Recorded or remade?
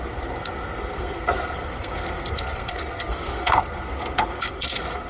remade